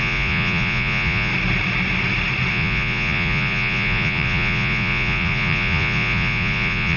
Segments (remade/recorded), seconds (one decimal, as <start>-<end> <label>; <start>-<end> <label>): 0.0-1.3 remade; 1.3-2.5 recorded; 2.5-7.0 remade